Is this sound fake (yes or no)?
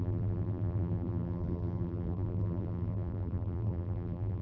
yes